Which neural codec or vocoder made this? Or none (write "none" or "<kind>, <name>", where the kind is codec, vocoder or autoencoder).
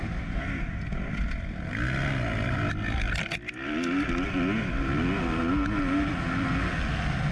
none